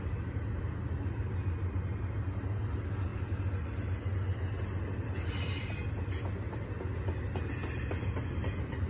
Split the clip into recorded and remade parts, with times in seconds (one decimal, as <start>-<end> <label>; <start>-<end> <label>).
0.0-8.9 recorded